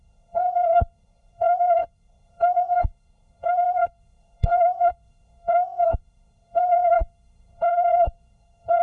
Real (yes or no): no